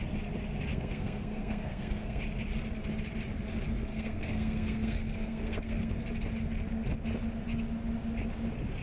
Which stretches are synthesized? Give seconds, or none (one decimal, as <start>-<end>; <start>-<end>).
0.7-2.2; 3.9-5.9